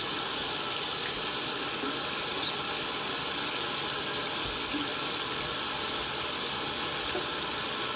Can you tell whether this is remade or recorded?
recorded